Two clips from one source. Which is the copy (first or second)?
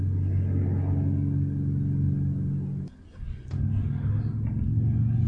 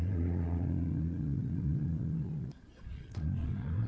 second